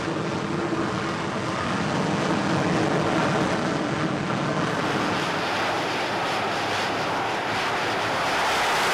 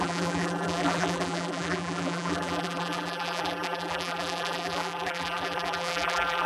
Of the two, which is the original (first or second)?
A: first